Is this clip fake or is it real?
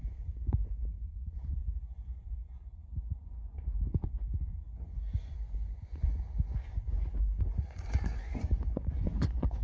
fake